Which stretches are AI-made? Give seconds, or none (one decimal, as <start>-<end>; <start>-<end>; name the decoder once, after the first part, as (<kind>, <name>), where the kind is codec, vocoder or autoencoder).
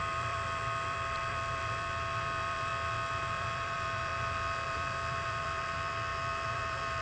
0.0-2.7 (vocoder, BigVGAN v2); 3.2-7.0